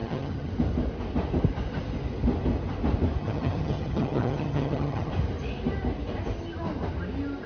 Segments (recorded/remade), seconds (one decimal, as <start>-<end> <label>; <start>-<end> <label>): 0.0-0.5 remade; 0.5-3.2 recorded; 3.2-5.1 remade; 5.1-7.5 recorded